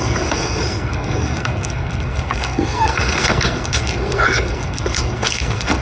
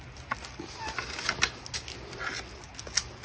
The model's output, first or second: first